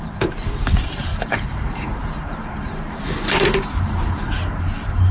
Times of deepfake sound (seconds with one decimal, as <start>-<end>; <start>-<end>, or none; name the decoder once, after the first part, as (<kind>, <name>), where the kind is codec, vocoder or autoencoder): 0.0-5.1 (vocoder, BigVGAN v2)